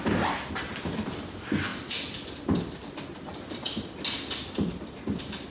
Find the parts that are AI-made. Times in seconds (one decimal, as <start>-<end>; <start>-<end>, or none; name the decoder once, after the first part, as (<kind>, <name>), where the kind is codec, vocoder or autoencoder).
none